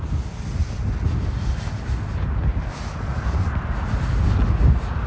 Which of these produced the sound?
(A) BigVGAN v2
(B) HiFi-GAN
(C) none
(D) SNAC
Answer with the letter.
C